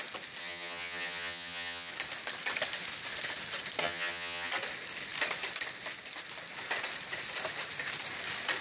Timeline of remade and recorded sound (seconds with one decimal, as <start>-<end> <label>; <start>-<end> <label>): 0.0-0.4 recorded; 0.4-1.9 remade; 1.9-3.8 recorded; 3.8-4.5 remade; 4.5-8.6 recorded